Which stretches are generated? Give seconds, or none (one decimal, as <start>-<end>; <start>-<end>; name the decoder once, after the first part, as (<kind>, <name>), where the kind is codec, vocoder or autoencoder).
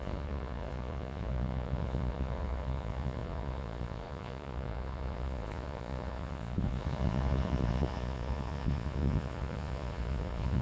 0.0-10.6 (vocoder, Vocos)